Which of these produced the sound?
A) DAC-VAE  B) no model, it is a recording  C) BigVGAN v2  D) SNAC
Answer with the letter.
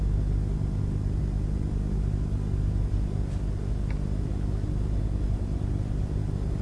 B